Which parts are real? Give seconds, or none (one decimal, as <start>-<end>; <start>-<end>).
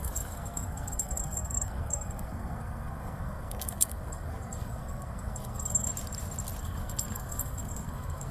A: 5.9-6.6